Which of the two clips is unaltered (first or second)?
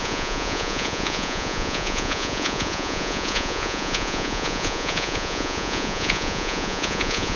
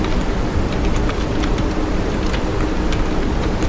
second